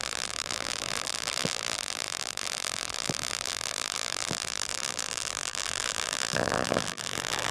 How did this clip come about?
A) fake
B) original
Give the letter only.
A